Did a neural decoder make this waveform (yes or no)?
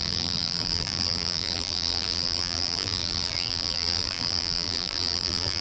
yes